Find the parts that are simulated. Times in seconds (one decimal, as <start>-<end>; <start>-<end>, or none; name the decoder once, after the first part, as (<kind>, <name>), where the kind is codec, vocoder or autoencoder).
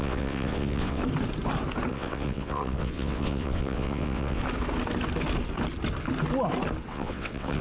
0.0-1.0 (vocoder, WaveNeXt); 1.9-4.4; 6.9-7.6